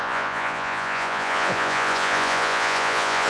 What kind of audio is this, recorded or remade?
remade